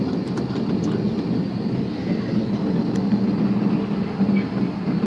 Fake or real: real